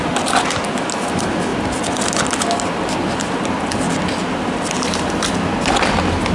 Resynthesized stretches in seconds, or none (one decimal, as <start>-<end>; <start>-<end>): none